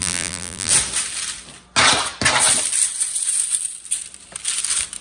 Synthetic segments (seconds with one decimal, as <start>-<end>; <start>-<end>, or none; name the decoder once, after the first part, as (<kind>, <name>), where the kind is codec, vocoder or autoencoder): 0.0-0.7 (vocoder, BigVGAN v2)